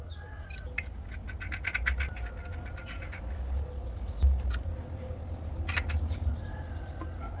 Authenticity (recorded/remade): recorded